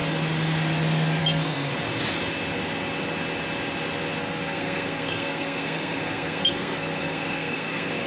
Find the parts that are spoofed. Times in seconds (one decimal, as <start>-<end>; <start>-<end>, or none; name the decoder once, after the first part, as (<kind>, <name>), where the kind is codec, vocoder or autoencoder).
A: 1.2-1.7 (codec, SNAC); 4.2-8.1